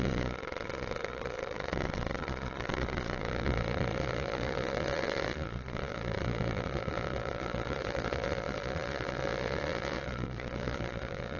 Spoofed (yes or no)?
yes